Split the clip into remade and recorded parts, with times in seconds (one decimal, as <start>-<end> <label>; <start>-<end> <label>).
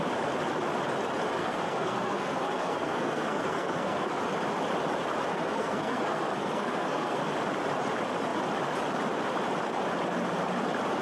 0.0-1.4 recorded; 1.4-4.2 remade; 4.2-5.3 recorded; 5.3-7.2 remade; 7.2-11.0 recorded